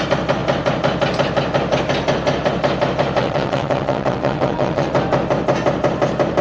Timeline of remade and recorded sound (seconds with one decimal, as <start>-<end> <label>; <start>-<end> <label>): 0.0-3.2 recorded; 3.2-4.9 remade; 4.9-6.4 recorded